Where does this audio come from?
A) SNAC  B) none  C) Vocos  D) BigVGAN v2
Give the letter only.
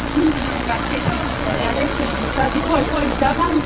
C